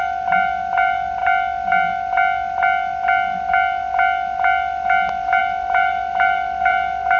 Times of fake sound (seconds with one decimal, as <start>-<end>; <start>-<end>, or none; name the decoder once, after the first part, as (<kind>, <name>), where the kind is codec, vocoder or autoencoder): 0.0-1.2 (vocoder, BigVGAN v2); 5.4-7.2